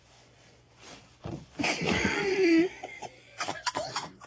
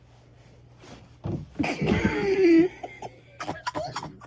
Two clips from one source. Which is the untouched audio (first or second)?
second